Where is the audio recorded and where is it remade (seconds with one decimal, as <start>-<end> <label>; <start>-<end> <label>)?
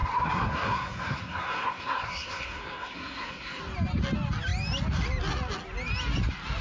0.0-3.6 remade; 3.6-6.6 recorded